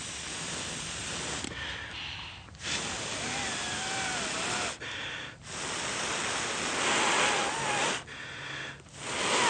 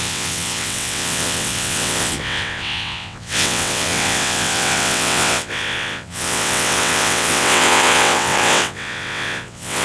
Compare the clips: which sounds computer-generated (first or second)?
second